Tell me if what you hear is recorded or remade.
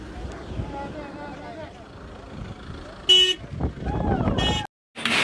recorded